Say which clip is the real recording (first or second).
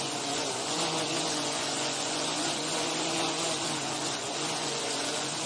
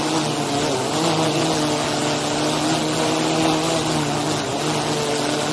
second